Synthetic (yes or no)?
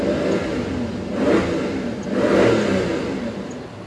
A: no